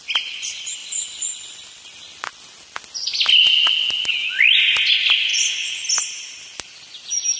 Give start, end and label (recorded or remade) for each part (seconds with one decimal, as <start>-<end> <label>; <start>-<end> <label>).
0.0-7.4 recorded

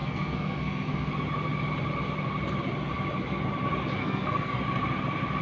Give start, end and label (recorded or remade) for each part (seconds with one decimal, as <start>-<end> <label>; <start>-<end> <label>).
0.0-1.1 remade; 1.1-4.0 recorded; 4.0-4.6 remade; 4.6-5.4 recorded

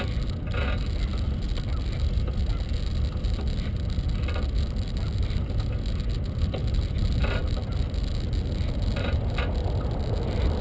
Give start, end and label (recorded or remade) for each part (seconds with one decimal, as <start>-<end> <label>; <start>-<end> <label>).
0.0-10.6 recorded

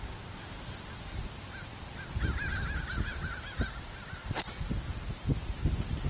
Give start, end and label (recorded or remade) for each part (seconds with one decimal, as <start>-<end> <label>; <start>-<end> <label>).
0.0-6.1 recorded

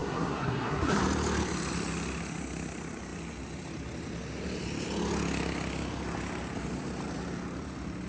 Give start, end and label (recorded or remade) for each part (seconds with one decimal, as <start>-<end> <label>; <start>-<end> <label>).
0.0-1.0 remade; 1.0-8.1 recorded